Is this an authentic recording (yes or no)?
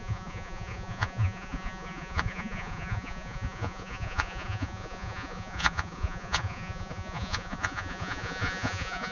no